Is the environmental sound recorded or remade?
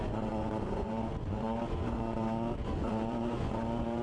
remade